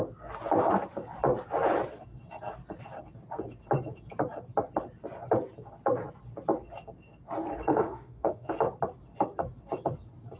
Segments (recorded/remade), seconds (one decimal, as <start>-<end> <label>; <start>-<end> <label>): 0.0-7.7 recorded; 7.7-8.5 remade; 8.5-10.4 recorded